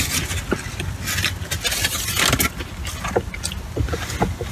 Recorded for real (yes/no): yes